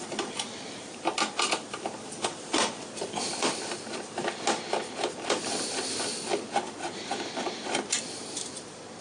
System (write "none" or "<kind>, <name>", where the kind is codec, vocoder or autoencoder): vocoder, BigVGAN v2